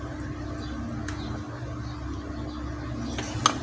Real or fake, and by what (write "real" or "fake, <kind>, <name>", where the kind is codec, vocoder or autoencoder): real